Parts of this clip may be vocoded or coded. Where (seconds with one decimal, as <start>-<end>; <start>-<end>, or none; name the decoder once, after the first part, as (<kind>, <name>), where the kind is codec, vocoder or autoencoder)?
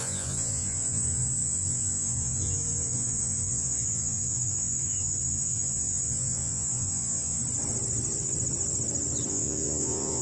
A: 0.0-7.4 (vocoder, Vocos); 9.3-10.2